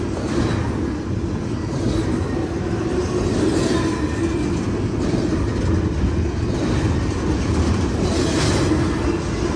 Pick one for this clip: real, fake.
real